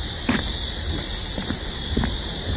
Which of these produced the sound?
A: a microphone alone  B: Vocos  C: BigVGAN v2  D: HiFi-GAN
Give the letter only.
A